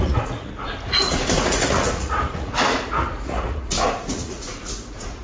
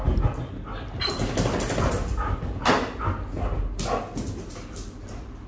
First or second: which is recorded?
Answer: second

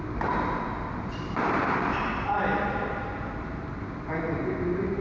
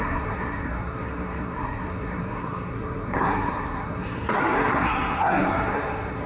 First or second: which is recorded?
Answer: first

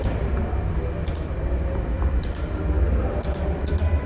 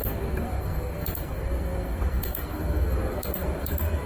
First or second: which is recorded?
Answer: first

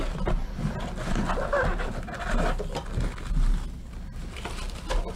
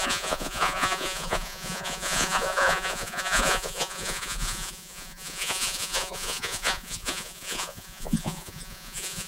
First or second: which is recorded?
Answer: first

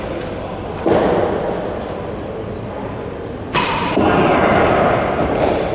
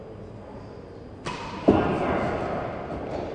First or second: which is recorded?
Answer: second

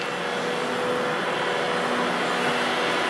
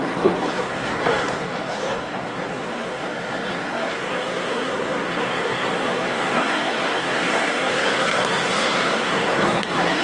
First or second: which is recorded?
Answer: first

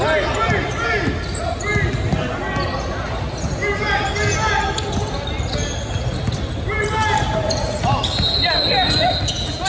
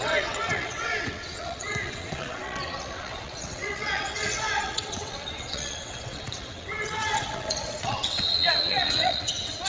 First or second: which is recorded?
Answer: first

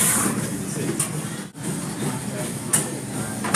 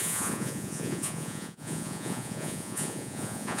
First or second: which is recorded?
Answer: first